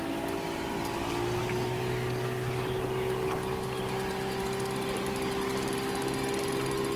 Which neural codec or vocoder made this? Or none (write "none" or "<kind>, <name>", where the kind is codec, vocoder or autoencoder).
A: none